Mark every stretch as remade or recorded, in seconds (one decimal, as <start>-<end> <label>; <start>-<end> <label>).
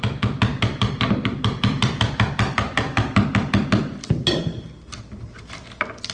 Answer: 0.0-0.5 recorded; 0.5-4.2 remade; 4.2-6.1 recorded